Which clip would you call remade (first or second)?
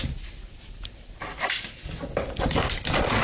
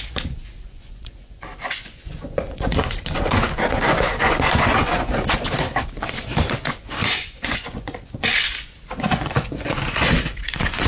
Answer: second